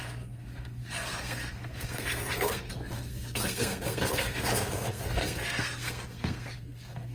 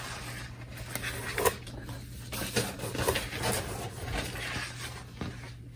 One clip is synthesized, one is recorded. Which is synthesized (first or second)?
first